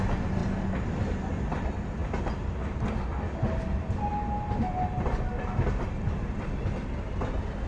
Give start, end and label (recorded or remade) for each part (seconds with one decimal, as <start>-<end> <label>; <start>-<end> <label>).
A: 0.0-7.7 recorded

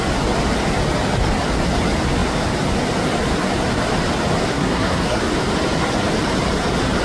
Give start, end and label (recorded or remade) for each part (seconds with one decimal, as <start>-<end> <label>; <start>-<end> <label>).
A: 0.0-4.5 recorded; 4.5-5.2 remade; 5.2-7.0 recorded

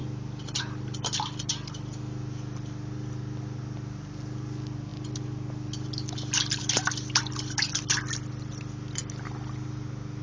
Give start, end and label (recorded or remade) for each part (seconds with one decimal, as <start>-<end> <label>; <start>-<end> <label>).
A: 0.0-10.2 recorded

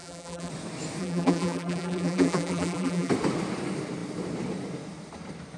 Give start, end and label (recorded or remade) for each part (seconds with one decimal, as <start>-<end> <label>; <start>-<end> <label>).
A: 0.0-0.5 remade; 0.5-1.0 recorded; 1.0-3.1 remade; 3.1-5.6 recorded

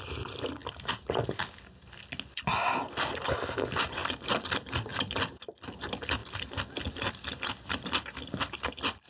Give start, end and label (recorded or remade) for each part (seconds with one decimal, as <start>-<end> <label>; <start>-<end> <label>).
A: 0.0-0.6 recorded; 0.6-1.2 remade; 1.2-9.1 recorded

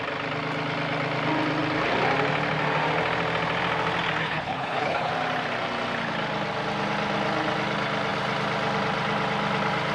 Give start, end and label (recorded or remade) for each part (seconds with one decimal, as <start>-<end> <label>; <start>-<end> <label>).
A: 0.0-4.2 recorded; 4.2-5.1 remade; 5.1-9.9 recorded

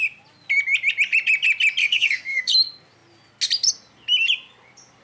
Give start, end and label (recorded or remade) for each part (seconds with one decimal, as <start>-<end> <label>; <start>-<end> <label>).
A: 0.0-1.8 recorded; 1.8-2.5 remade; 2.5-5.0 recorded